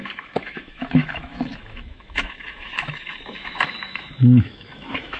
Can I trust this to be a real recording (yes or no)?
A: no